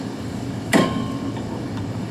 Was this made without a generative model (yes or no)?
no